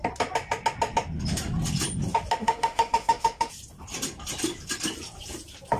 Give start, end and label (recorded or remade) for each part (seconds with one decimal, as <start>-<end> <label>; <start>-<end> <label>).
0.0-2.4 recorded; 2.4-3.5 remade; 3.5-5.8 recorded